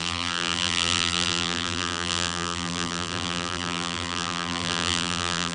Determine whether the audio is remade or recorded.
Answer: remade